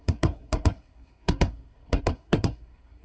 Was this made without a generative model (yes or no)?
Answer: no